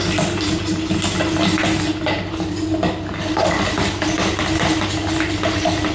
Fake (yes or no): no